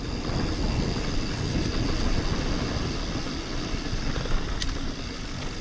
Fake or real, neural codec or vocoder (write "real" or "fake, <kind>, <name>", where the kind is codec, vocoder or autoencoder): real